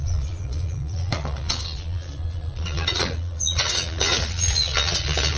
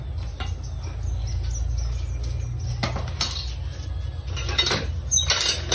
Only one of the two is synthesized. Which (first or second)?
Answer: first